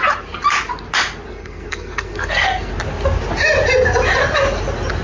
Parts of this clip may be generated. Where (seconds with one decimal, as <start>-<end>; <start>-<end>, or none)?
1.3-2.7